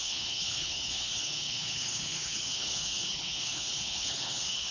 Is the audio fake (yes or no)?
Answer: yes